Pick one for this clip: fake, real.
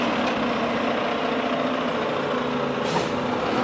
real